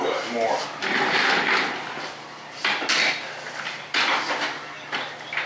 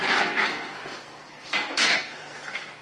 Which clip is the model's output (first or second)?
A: second